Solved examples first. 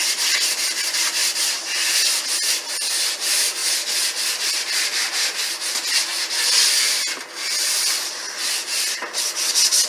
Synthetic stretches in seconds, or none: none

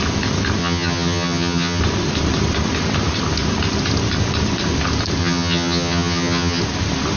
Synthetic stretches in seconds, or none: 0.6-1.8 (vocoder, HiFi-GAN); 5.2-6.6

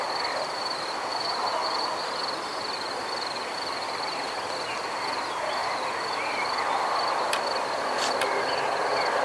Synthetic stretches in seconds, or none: none

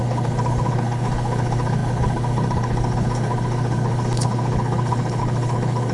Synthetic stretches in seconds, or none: 0.0-5.9 (codec, HILCodec)

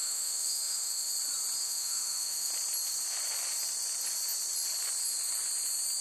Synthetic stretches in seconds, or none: 0.0-1.1 (autoencoder, DAC-VAE); 1.6-2.5